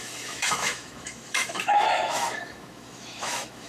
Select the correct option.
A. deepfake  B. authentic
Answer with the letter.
A